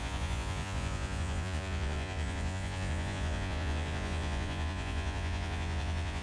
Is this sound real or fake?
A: fake